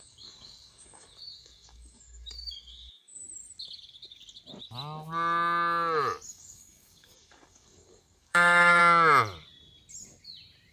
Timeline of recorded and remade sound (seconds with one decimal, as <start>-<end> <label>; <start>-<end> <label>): 0.0-3.2 remade; 3.2-6.3 recorded; 6.3-8.8 remade; 8.8-10.7 recorded